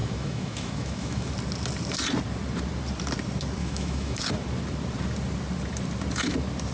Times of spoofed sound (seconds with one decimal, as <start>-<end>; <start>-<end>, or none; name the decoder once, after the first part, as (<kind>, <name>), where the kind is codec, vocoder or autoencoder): 0.0-1.3 (autoencoder, DAC-VAE); 3.6-4.2